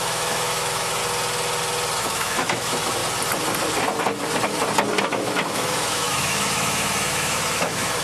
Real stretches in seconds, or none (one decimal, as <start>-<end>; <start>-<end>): 1.0-2.0; 3.0-5.0